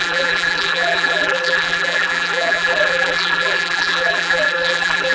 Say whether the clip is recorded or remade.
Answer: remade